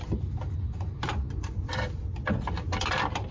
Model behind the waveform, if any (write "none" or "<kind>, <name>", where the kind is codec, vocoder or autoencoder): none